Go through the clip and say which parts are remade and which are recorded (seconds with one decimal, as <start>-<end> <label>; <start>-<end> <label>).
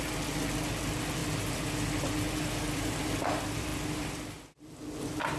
0.0-5.4 recorded